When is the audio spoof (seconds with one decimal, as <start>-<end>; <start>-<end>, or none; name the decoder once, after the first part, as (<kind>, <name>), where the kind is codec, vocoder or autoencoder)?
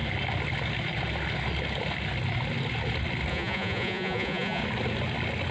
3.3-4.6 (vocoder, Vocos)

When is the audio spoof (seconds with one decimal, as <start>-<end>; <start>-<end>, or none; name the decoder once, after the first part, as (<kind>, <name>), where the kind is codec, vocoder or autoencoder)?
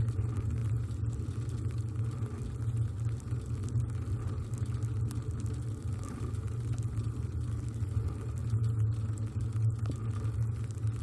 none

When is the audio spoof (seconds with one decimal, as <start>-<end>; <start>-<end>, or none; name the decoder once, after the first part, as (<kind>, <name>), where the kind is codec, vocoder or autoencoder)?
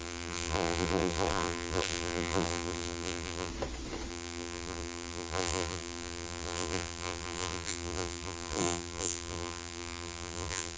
0.0-3.5 (vocoder, BigVGAN v2); 4.1-10.8